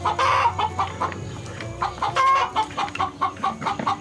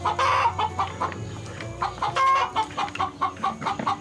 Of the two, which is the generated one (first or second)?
first